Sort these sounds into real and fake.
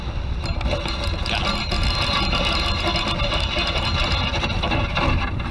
real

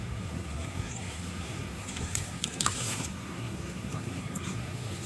fake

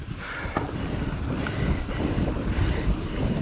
real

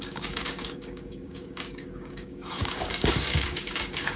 fake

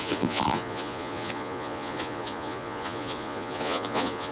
fake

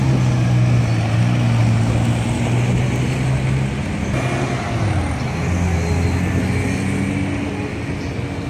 real